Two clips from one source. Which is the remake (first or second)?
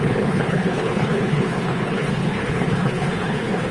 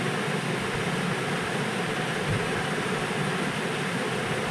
first